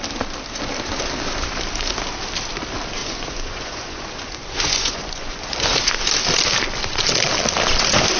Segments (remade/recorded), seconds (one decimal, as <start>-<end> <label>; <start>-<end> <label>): 0.0-3.0 recorded; 3.0-6.0 remade; 6.0-8.2 recorded